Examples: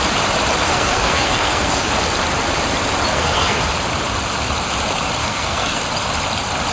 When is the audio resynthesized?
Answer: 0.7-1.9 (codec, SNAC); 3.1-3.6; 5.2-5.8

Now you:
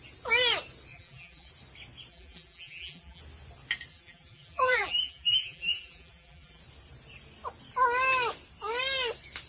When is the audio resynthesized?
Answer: 0.9-1.5 (vocoder, BigVGAN v2); 2.1-3.2; 3.9-6.6

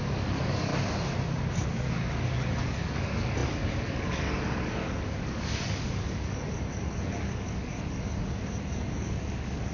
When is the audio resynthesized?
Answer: 0.0-0.7 (codec, DAC); 1.5-9.7

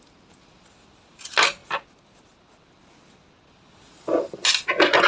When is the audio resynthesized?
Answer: none

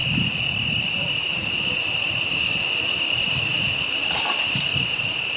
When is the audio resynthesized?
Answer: 0.7-4.7 (vocoder, BigVGAN v2)

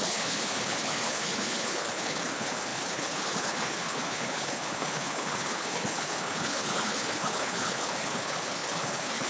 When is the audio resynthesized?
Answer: 0.0-9.3 (codec, HILCodec)

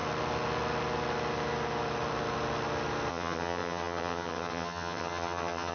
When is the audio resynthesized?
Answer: 3.1-5.7 (vocoder, HiFi-GAN)